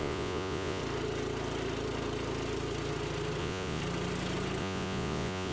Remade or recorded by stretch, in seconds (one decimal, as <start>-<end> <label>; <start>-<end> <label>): 0.0-0.8 remade; 0.8-3.4 recorded; 3.4-3.8 remade; 3.8-4.6 recorded; 4.6-5.5 remade